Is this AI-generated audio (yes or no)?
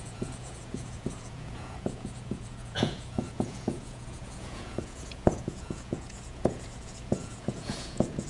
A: yes